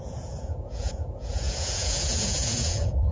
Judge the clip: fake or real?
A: fake